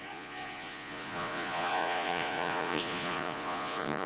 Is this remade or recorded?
remade